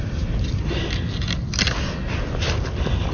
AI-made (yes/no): no